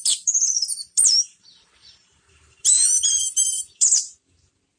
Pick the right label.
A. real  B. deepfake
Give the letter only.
B